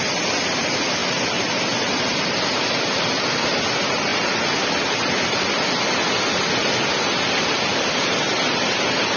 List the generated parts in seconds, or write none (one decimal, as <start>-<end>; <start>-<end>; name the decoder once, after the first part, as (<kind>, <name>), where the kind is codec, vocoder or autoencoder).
1.0-2.4 (vocoder, BigVGAN v2)